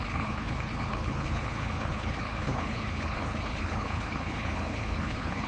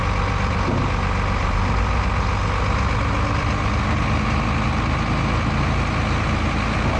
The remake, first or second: first